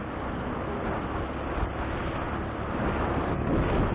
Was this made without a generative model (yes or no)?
yes